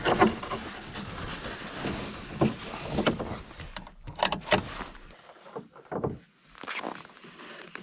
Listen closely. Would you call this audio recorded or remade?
recorded